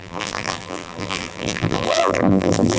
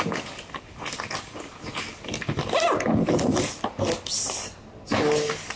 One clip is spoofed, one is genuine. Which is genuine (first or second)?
second